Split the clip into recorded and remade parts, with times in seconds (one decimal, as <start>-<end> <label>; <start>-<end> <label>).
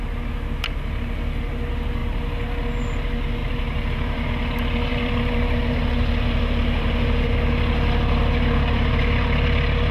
0.0-3.4 recorded; 3.4-4.3 remade; 4.3-4.9 recorded; 4.9-6.0 remade; 6.0-9.9 recorded